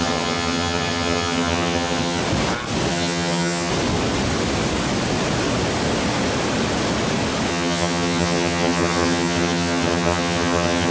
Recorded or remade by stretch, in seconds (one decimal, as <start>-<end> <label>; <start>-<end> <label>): 0.0-2.2 remade; 2.2-2.9 recorded; 2.9-3.7 remade; 3.7-7.5 recorded; 7.5-10.9 remade